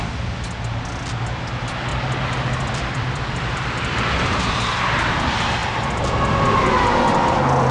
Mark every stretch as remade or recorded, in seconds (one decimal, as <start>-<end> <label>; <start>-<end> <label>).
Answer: 0.0-1.9 recorded; 1.9-4.8 remade; 4.8-7.7 recorded